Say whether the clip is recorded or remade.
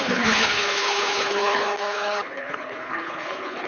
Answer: remade